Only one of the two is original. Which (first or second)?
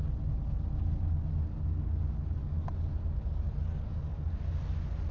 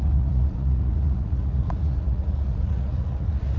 first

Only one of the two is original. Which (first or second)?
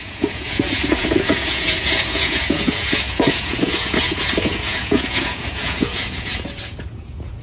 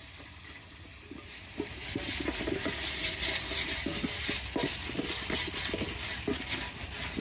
second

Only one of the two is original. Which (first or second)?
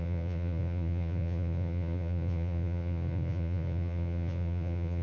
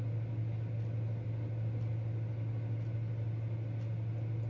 second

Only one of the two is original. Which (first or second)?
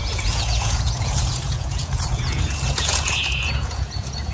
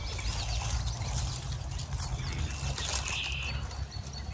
second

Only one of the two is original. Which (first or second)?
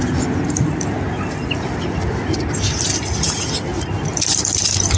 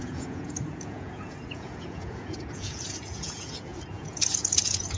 first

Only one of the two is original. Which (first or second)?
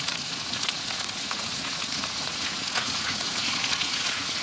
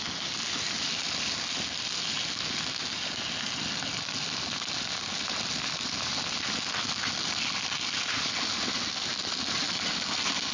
second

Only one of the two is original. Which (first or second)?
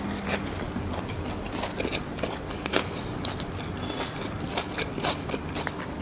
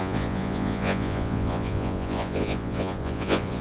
first